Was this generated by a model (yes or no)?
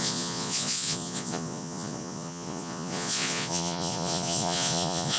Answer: yes